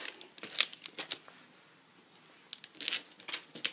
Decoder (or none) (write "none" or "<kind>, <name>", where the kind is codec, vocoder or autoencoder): none